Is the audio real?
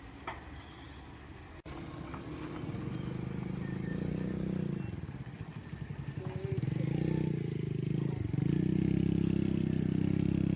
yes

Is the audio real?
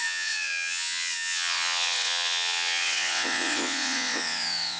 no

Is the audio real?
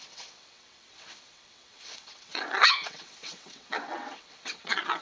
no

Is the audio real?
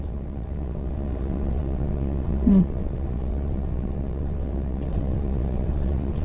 no